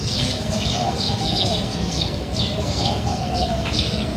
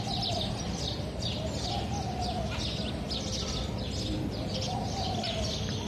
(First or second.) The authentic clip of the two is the second